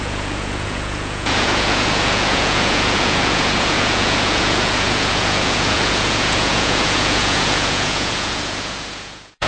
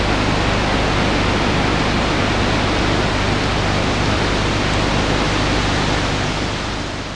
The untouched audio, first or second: second